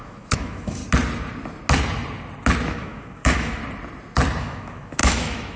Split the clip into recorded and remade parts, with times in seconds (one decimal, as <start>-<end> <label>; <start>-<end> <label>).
0.0-0.8 remade; 0.8-2.7 recorded; 2.7-3.6 remade; 3.6-4.4 recorded; 4.4-5.6 remade